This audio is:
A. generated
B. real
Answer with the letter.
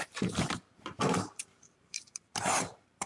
A